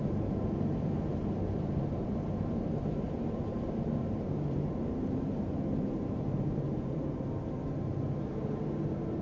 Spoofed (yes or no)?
yes